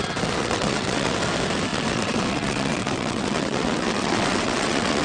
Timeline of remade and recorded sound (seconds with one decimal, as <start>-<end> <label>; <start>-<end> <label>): 0.0-0.4 recorded; 0.4-1.2 remade; 1.2-1.7 recorded; 1.7-5.0 remade